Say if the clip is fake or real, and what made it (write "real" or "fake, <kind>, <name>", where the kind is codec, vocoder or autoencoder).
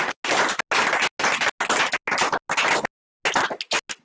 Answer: real